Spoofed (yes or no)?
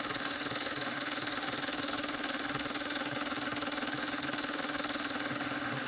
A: yes